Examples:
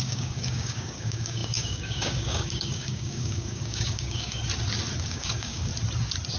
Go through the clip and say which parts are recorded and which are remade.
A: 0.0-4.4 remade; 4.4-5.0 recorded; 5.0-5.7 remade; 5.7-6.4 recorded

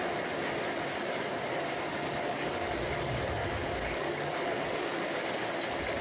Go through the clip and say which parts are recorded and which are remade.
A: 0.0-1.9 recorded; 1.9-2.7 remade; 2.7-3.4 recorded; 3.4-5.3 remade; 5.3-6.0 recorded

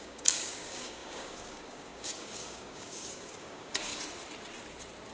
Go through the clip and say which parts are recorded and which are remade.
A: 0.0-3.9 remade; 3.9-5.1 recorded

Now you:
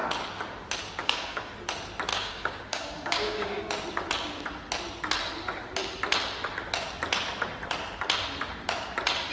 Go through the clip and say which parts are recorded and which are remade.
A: 0.0-1.0 recorded; 1.0-1.5 remade; 1.5-2.1 recorded; 2.1-3.6 remade; 3.6-9.3 recorded

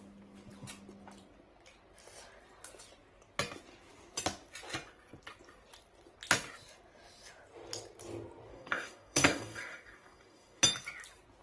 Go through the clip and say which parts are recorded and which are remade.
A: 0.0-8.5 recorded; 8.5-10.6 remade; 10.6-11.4 recorded